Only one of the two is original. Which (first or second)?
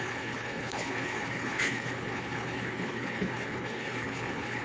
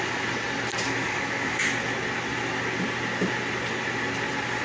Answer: second